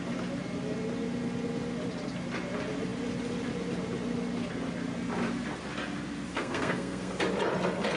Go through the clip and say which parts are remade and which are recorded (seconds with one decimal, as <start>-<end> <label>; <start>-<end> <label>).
0.0-6.3 recorded; 6.3-7.1 remade; 7.1-8.0 recorded